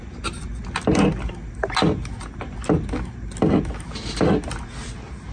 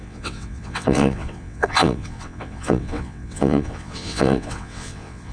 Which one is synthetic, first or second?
second